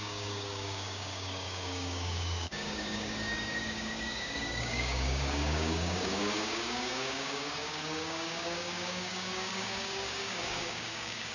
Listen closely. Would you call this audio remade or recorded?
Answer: remade